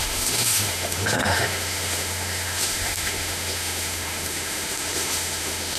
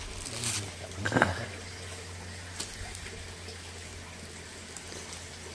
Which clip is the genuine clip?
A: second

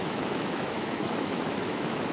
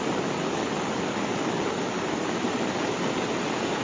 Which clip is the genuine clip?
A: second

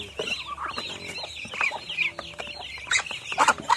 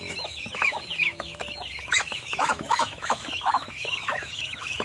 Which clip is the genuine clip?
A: first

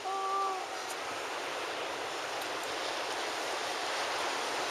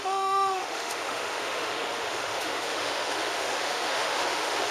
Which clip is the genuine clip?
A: first